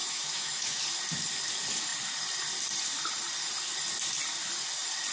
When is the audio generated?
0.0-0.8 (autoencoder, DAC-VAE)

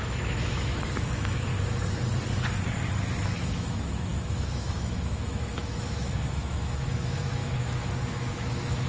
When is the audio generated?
0.0-1.5 (autoencoder, DAC-VAE); 3.5-8.9

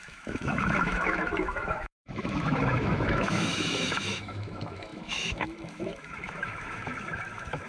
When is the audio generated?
0.0-7.7 (autoencoder, DAC-VAE)

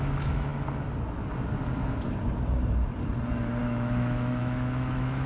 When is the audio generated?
0.0-0.5 (autoencoder, DAC-VAE); 3.6-5.3

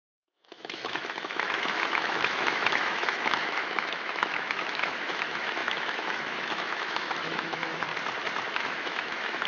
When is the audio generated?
0.0-7.9 (autoencoder, DAC-VAE); 8.5-9.5

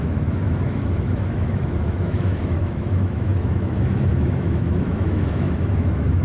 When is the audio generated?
0.0-6.2 (autoencoder, DAC-VAE)

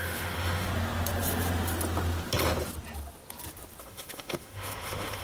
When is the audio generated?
0.0-0.7 (autoencoder, DAC-VAE); 3.8-5.2

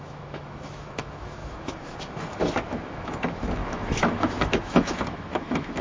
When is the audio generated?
0.0-5.8 (autoencoder, DAC-VAE)